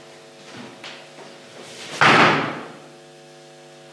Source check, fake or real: real